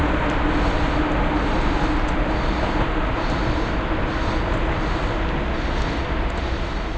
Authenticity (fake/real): real